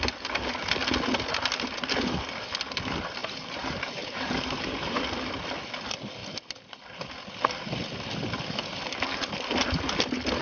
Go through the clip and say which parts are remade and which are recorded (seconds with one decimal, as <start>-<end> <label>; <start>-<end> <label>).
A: 0.0-3.2 recorded; 3.2-5.0 remade; 5.0-10.4 recorded

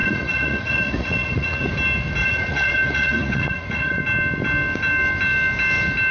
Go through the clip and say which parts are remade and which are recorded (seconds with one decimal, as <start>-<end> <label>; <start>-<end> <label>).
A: 0.0-1.7 remade; 1.7-2.2 recorded; 2.2-4.0 remade; 4.0-6.1 recorded

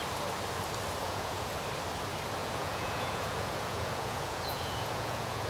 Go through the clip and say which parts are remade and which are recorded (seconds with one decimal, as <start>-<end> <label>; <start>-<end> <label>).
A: 0.0-1.0 recorded; 1.0-1.5 remade; 1.5-2.4 recorded; 2.4-5.5 remade

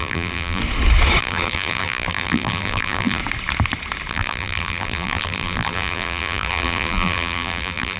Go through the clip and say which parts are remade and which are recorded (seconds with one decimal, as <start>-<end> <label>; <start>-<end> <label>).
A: 0.0-0.6 remade; 0.6-1.2 recorded; 1.2-3.2 remade; 3.2-4.1 recorded; 4.1-8.0 remade

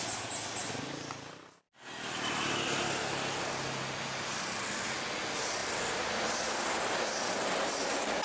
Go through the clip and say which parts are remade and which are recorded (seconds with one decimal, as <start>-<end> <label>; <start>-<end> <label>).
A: 0.0-8.2 recorded